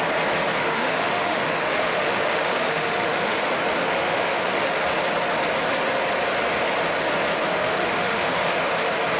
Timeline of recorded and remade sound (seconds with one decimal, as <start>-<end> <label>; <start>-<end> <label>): 0.0-0.6 recorded; 0.6-3.4 remade; 3.4-3.8 recorded; 3.8-4.7 remade; 4.7-7.5 recorded; 7.5-8.6 remade; 8.6-9.2 recorded